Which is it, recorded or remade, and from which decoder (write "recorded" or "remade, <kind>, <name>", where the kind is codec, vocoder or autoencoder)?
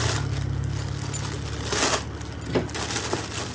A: recorded